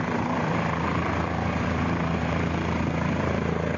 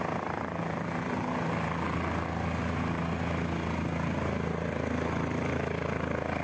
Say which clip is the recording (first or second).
second